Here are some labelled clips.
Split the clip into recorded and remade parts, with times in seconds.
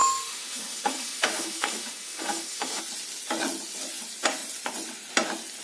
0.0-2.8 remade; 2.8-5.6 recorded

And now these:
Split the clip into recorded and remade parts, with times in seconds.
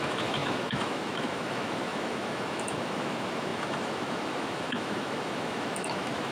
0.0-6.3 remade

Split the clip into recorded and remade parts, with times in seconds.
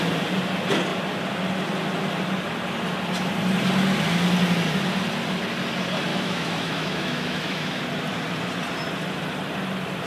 0.0-6.1 recorded; 6.1-7.8 remade; 7.8-10.1 recorded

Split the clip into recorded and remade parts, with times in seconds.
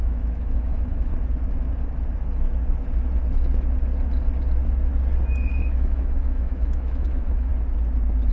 0.0-1.1 remade; 1.1-5.5 recorded; 5.5-7.5 remade; 7.5-8.3 recorded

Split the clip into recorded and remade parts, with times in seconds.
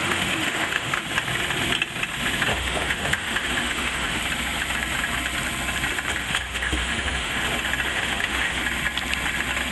0.0-1.0 remade; 1.0-2.5 recorded; 2.5-4.2 remade; 4.2-6.2 recorded; 6.2-7.4 remade; 7.4-7.9 recorded; 7.9-8.6 remade; 8.6-9.7 recorded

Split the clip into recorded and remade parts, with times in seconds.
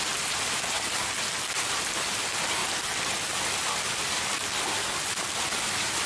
0.0-6.1 recorded